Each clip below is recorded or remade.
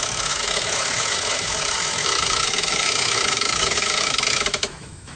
remade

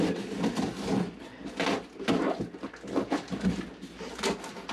recorded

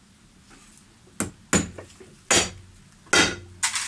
recorded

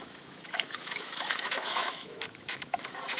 remade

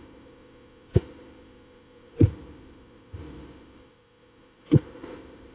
remade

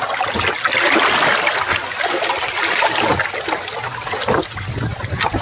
recorded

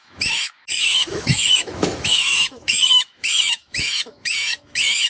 remade